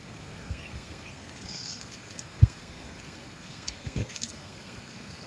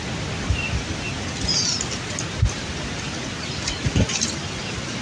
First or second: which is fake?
first